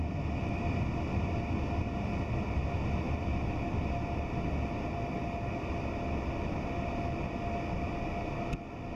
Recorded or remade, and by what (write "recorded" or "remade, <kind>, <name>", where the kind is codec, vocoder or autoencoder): recorded